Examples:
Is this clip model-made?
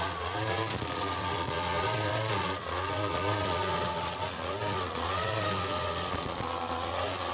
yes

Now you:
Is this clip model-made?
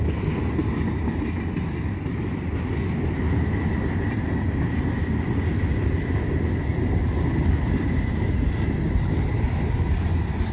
no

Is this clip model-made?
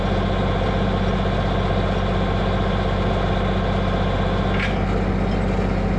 no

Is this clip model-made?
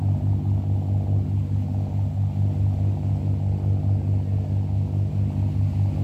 no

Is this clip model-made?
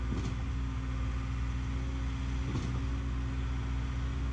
no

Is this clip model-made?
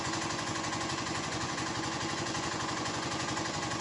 yes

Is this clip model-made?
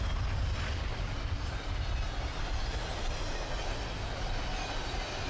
no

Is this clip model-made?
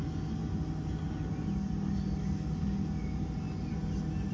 no